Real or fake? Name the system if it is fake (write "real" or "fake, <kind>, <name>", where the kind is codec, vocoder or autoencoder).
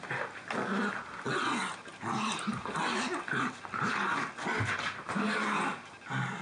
real